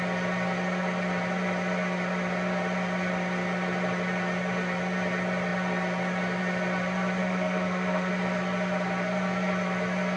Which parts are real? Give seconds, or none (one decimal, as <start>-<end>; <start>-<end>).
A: 0.0-7.2; 8.1-10.2